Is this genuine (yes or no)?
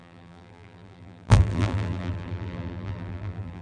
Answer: no